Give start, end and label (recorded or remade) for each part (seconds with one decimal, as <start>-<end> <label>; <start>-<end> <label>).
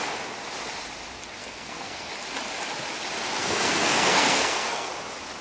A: 0.0-1.4 recorded; 1.4-2.1 remade; 2.1-3.4 recorded; 3.4-4.9 remade; 4.9-5.4 recorded